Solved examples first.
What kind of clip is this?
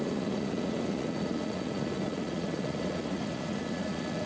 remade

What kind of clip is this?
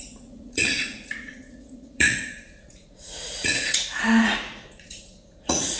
remade